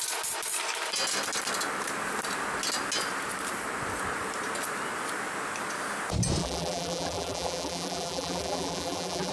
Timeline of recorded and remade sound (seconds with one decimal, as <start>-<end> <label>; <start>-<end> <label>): 0.0-6.4 recorded; 6.4-9.3 remade